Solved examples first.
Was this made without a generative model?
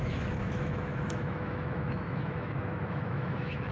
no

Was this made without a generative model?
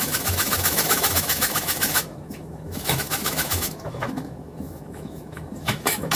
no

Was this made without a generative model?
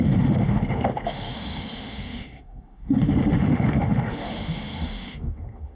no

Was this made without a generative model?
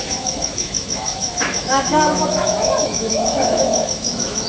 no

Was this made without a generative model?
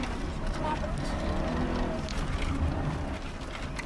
yes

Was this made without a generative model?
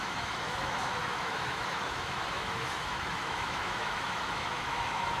no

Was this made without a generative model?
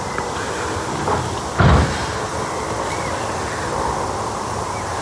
yes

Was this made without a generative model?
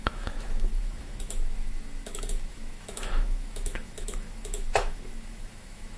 no